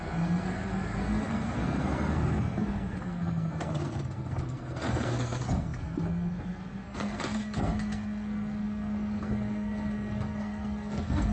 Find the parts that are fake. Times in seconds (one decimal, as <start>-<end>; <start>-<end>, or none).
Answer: 0.0-11.3

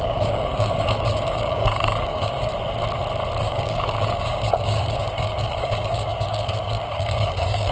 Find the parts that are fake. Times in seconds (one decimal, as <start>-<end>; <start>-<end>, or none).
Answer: 0.0-2.5; 3.4-7.7